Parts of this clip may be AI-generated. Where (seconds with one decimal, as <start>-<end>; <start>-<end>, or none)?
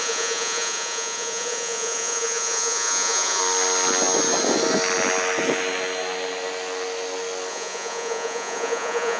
0.0-3.4; 7.5-9.2